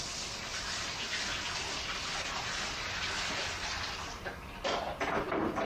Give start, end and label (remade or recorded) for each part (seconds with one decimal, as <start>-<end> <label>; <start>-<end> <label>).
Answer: 0.0-5.6 recorded